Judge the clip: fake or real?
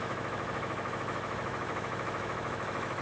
fake